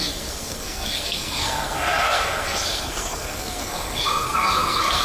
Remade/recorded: remade